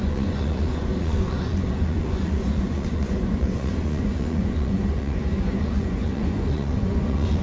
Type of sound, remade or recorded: remade